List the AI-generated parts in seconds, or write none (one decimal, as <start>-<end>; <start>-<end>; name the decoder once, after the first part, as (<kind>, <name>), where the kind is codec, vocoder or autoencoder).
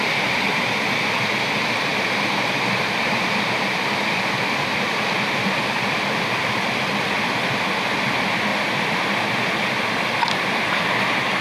1.9-6.9 (vocoder, BigVGAN v2)